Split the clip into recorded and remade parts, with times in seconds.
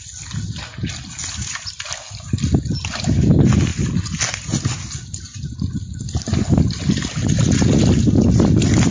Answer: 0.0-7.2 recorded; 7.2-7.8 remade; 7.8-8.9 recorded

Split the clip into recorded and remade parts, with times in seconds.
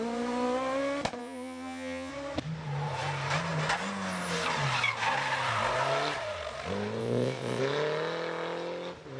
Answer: 0.0-1.2 recorded; 1.2-2.1 remade; 2.1-7.0 recorded; 7.0-7.6 remade; 7.6-9.2 recorded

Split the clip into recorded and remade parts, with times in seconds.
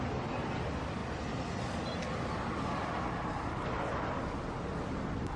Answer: 0.0-5.4 recorded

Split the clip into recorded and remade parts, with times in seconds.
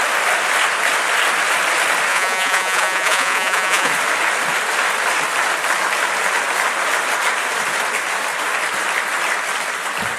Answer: 0.0-2.1 recorded; 2.1-3.9 remade; 3.9-10.2 recorded